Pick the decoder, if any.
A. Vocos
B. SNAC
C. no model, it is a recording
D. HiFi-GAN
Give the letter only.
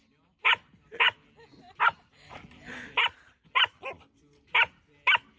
C